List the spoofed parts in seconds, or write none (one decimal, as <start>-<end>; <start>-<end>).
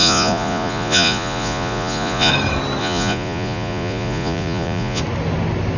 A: 0.0-2.3; 2.8-5.0